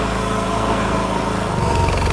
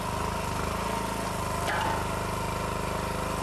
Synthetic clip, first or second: first